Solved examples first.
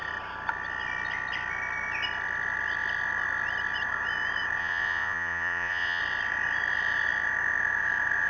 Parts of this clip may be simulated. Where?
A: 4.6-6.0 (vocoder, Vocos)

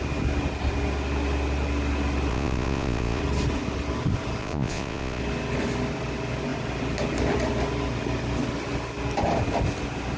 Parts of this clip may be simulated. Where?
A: 2.3-3.2 (vocoder, Vocos); 4.4-5.2